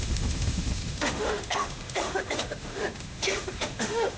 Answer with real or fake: fake